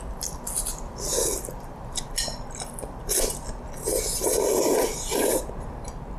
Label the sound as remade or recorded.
remade